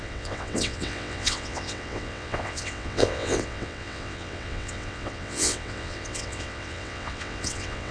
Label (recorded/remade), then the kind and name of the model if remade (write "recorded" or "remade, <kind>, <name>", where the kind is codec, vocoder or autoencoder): remade, vocoder, WaveNeXt